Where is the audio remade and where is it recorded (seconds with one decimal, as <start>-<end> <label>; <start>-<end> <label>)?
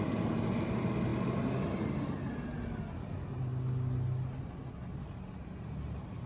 0.0-6.3 recorded